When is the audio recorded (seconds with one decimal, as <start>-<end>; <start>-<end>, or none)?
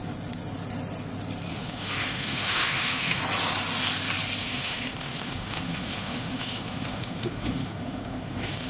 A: 0.0-1.5; 3.2-4.4